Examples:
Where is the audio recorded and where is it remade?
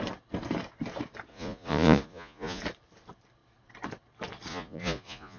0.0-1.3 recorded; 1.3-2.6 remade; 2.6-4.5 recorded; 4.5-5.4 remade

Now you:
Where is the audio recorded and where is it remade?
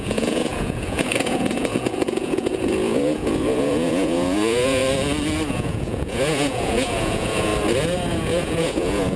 0.0-4.8 remade; 4.8-5.5 recorded; 5.5-7.5 remade; 7.5-8.1 recorded; 8.1-9.2 remade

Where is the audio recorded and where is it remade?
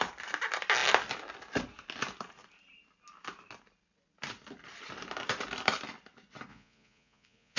0.0-6.5 recorded; 6.5-7.6 remade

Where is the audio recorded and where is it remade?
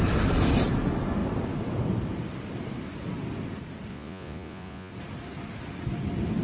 0.0-3.9 recorded; 3.9-4.9 remade; 4.9-6.4 recorded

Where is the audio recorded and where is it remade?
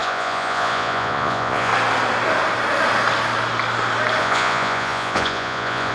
0.0-1.7 remade; 1.7-4.2 recorded; 4.2-5.9 remade